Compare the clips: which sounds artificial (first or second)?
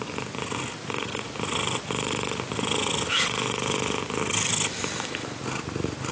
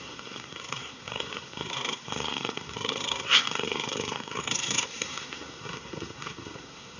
second